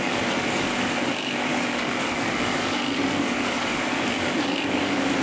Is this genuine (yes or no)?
no